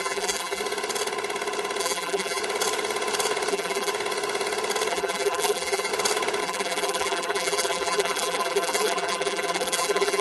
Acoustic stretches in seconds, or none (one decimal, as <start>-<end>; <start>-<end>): 0.6-1.8; 2.4-3.5; 3.9-4.9; 5.9-6.4